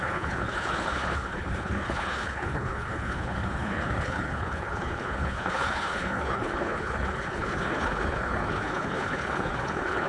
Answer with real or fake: fake